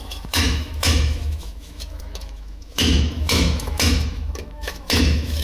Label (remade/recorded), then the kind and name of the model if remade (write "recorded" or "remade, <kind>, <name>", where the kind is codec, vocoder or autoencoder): remade, autoencoder, DAC-VAE